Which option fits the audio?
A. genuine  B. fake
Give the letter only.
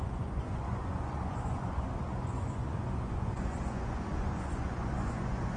B